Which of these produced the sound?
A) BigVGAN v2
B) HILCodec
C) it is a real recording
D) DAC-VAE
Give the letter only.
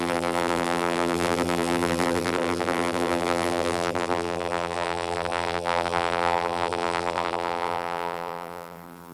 A